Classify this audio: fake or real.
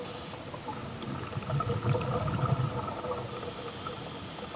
real